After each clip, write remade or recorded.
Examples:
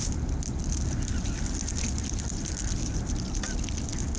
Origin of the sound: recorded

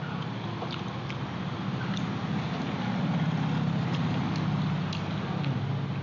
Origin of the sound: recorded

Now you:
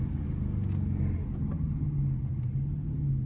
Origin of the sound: recorded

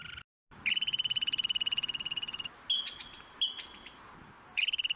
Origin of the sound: recorded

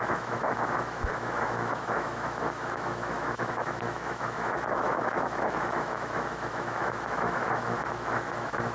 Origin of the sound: remade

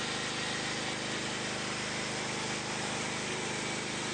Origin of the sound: recorded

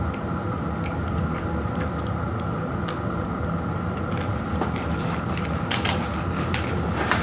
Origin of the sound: recorded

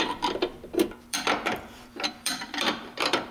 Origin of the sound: remade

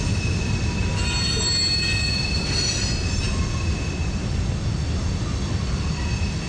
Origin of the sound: recorded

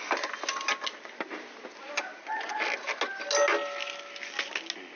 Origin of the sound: recorded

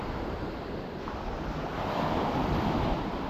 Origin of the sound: recorded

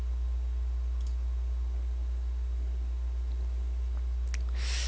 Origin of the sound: recorded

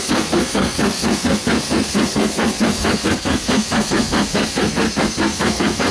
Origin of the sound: remade